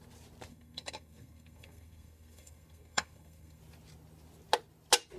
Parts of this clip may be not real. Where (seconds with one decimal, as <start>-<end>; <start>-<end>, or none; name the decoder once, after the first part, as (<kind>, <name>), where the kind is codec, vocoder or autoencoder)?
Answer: 0.5-3.6 (codec, SNAC)